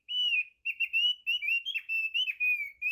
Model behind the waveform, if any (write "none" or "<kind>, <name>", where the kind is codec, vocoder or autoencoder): none